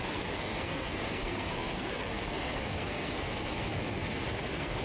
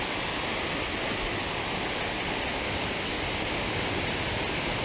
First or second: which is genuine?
second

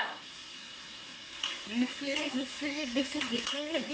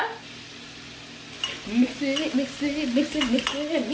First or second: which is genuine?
second